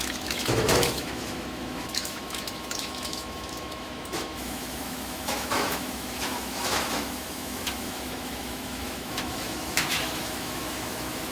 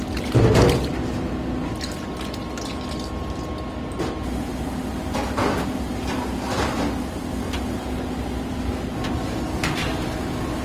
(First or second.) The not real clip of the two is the first